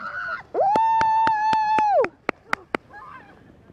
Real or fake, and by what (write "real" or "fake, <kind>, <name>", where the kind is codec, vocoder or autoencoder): real